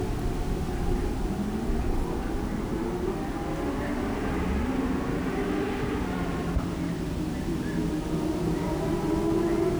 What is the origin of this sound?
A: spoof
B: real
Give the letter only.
B